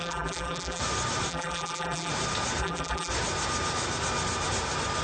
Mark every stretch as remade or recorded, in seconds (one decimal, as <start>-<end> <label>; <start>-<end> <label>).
0.0-0.8 remade; 0.8-1.3 recorded; 1.3-2.1 remade; 2.1-2.6 recorded; 2.6-3.1 remade; 3.1-5.0 recorded